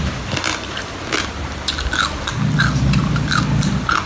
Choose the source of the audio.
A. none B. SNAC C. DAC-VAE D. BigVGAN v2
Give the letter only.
A